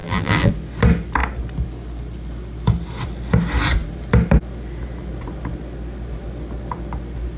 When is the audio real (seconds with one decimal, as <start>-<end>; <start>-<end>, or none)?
0.5-7.4